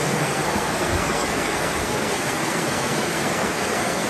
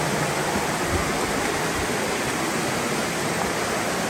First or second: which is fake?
first